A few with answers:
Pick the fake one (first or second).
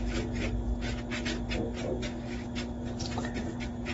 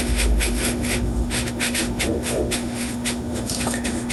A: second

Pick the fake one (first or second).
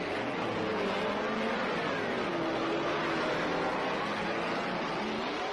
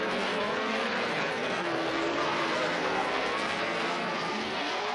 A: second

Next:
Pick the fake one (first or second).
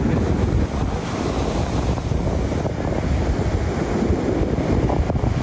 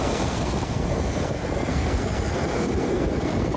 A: second